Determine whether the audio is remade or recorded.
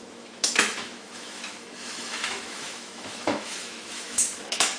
remade